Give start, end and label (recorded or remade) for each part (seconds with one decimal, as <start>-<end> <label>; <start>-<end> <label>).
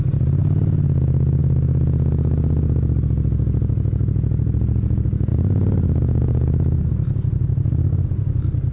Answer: 0.0-5.3 recorded; 5.3-7.9 remade; 7.9-8.7 recorded